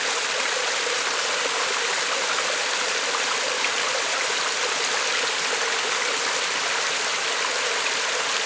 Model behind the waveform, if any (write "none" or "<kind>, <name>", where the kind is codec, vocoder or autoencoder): none